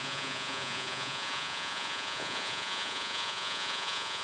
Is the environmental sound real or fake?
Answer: fake